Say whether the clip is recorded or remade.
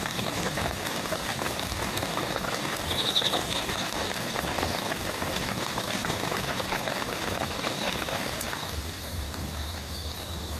remade